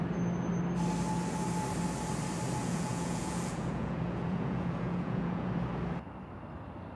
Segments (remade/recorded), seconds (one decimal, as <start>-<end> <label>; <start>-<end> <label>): 0.0-2.6 recorded; 2.6-5.5 remade; 5.5-7.0 recorded